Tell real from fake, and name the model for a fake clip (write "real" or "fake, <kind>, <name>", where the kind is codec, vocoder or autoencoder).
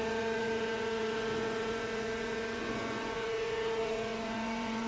fake, vocoder, Vocos